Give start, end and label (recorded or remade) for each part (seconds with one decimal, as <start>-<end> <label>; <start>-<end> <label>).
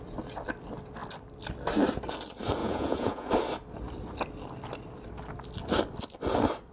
0.0-2.6 recorded; 2.6-3.3 remade; 3.3-6.7 recorded